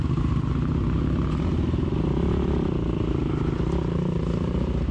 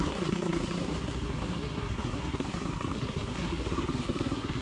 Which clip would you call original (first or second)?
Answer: first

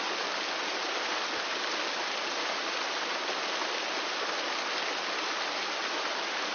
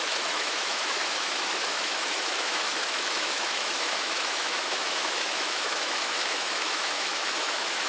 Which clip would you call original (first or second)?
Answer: first